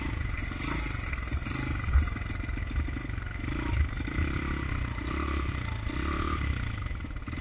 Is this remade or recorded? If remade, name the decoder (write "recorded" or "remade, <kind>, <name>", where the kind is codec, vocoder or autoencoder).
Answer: recorded